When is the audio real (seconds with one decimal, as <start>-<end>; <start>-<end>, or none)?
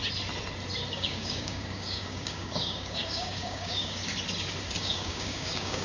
0.0-0.9; 4.0-4.8